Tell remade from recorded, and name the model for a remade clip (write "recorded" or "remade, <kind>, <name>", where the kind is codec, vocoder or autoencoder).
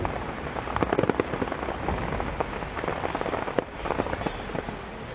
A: recorded